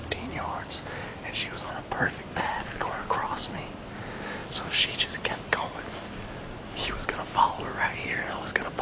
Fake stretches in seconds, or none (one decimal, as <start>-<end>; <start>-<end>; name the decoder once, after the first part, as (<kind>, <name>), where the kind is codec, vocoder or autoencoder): 4.4-7.9 (vocoder, BigVGAN v2)